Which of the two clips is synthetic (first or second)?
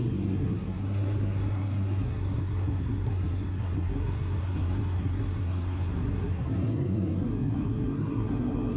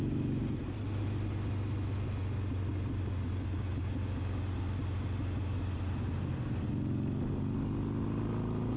first